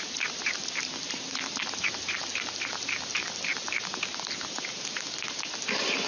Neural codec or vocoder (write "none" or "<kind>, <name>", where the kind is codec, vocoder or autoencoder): none